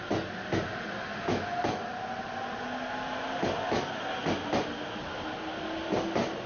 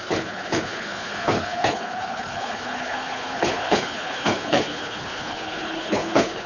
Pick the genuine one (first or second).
first